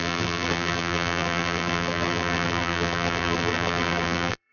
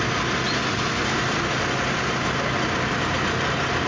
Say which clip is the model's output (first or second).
first